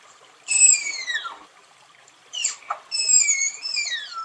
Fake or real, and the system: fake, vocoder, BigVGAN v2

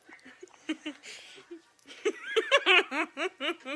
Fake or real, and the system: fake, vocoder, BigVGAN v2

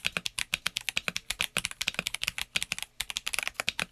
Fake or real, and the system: real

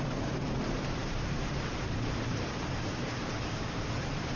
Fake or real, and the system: fake, vocoder, BigVGAN v2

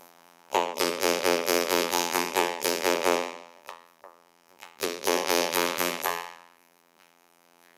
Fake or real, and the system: fake, vocoder, BigVGAN v2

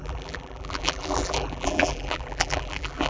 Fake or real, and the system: fake, vocoder, BigVGAN v2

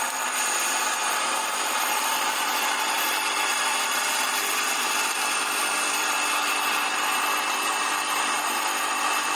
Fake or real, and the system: fake, vocoder, BigVGAN v2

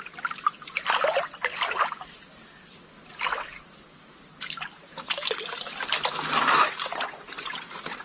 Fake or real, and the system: real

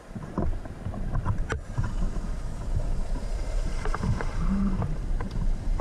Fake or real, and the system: fake, vocoder, BigVGAN v2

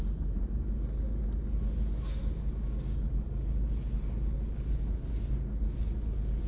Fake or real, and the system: real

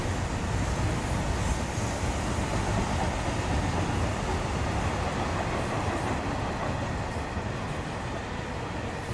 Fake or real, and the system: real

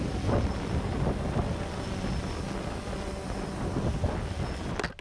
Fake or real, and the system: real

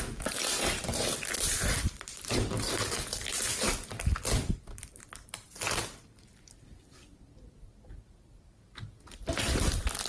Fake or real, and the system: fake, vocoder, BigVGAN v2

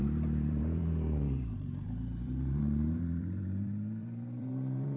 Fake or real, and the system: fake, vocoder, BigVGAN v2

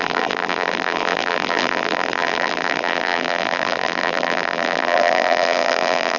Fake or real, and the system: fake, vocoder, BigVGAN v2